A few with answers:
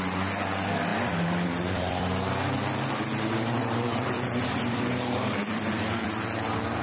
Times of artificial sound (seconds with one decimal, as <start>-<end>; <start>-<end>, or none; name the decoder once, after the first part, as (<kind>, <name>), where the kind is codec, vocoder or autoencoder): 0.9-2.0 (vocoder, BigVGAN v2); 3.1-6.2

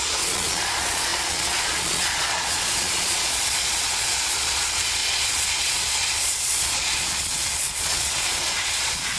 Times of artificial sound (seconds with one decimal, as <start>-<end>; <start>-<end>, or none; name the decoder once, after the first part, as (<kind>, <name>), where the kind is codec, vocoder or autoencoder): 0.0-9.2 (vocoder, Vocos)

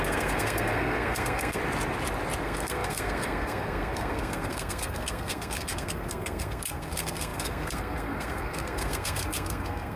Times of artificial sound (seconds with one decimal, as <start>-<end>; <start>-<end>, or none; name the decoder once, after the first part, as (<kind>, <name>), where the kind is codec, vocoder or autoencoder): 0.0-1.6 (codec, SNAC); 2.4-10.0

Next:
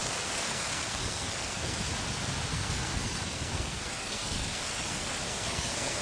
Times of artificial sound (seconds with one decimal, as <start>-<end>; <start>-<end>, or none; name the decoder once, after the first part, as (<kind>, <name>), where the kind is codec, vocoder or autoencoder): 0.0-1.9 (codec, SNAC); 2.5-6.0

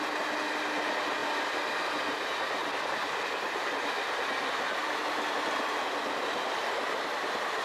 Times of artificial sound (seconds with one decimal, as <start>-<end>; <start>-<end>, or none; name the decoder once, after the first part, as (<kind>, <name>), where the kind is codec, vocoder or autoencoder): 1.2-1.9 (vocoder, BigVGAN v2); 2.6-4.3; 4.8-5.4

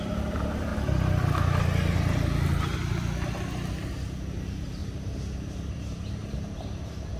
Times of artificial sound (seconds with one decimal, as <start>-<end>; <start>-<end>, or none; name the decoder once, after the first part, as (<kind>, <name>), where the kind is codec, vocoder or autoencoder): 0.0-0.7 (vocoder, BigVGAN v2); 4.3-4.8; 5.7-6.2; 6.8-7.2

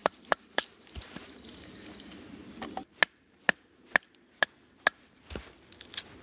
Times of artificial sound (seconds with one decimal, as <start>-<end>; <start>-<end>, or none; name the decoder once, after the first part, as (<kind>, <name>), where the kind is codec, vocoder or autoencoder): 0.0-1.7 (vocoder, BigVGAN v2)